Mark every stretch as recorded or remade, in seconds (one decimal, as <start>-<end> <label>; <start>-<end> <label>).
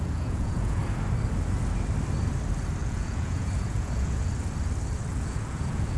0.0-0.8 remade; 0.8-2.8 recorded; 2.8-4.3 remade; 4.3-5.1 recorded; 5.1-6.0 remade